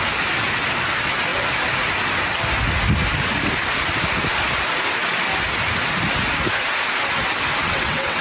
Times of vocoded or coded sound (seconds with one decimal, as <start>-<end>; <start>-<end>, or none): 7.6-8.2

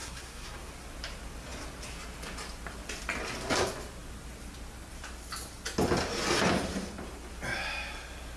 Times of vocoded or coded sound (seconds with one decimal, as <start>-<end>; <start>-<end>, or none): 0.0-0.7

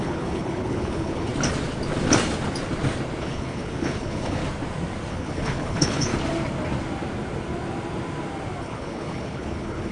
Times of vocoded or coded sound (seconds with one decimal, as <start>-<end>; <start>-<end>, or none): 0.0-1.3; 3.2-4.4; 5.1-6.1; 8.6-9.9

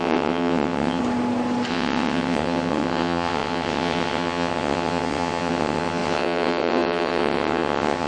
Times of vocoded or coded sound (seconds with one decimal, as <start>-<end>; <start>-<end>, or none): 0.0-1.0; 1.7-8.1

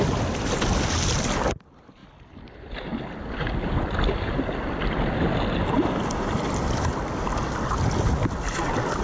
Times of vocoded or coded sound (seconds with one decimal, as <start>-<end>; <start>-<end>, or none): none

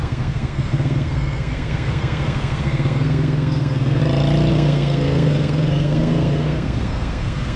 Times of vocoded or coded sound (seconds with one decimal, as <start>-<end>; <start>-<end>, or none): 0.0-4.0; 4.5-7.6

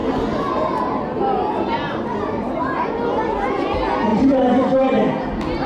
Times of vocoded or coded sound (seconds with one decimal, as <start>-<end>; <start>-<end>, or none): 4.1-5.1